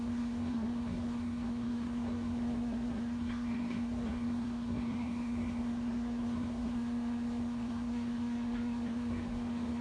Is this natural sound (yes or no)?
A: no